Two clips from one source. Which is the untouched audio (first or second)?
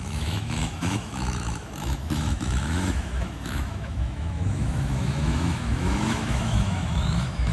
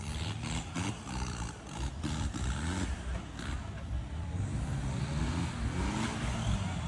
second